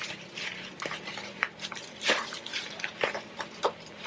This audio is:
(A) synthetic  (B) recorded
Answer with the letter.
A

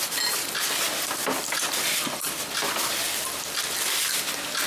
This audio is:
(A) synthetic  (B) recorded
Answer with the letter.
B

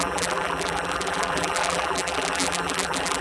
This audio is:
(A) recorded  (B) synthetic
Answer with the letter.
B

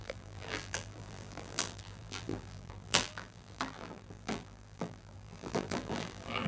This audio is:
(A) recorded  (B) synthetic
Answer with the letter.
B